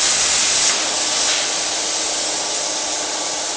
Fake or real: real